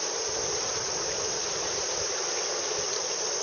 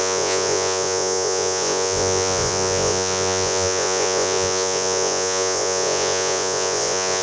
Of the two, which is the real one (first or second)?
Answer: first